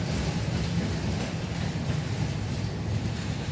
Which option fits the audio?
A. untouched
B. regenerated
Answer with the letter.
B